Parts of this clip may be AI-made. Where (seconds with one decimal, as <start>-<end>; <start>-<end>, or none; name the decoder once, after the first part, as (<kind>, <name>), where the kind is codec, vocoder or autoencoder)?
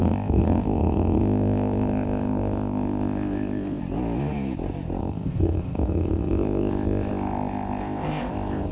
0.0-3.8 (codec, ZipCodec); 5.0-8.7